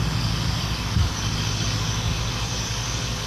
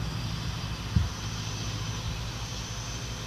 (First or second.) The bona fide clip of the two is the second